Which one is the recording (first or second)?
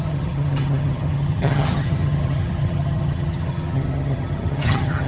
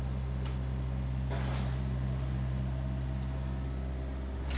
second